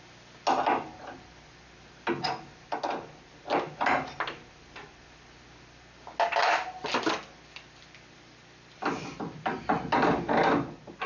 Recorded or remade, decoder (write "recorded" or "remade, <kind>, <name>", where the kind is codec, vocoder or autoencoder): recorded